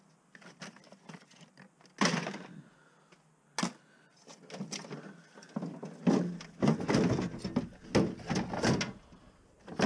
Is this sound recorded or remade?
recorded